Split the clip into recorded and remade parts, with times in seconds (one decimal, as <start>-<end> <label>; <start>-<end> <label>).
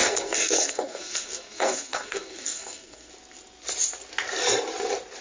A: 0.0-3.1 remade; 3.1-5.2 recorded